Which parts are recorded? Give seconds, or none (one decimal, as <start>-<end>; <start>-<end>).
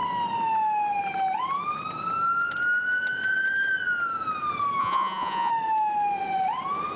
0.0-4.8; 5.5-7.0